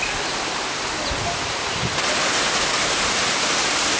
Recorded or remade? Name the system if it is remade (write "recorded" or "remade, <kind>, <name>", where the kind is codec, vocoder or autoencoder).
recorded